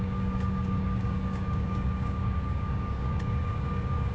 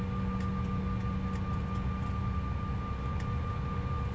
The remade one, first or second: first